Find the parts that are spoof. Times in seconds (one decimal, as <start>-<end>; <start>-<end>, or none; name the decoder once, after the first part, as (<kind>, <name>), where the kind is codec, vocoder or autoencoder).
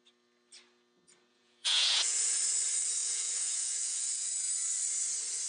1.3-2.4 (vocoder, Vocos); 3.0-4.5